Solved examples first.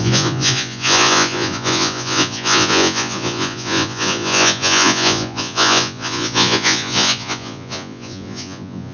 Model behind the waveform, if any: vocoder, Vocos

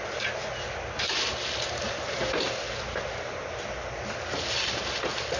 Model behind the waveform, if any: none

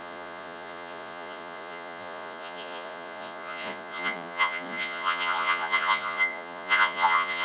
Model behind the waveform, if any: vocoder, Vocos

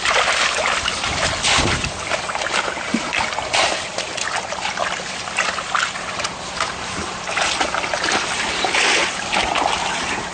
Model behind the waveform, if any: none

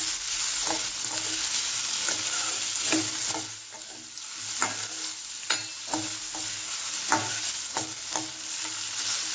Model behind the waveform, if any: none